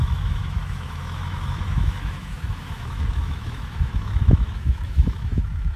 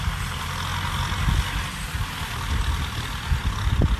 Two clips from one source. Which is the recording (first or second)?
second